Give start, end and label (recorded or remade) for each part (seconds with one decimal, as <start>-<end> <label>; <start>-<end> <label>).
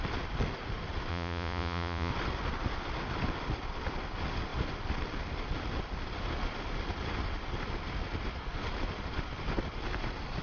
0.0-1.1 recorded; 1.1-2.1 remade; 2.1-10.4 recorded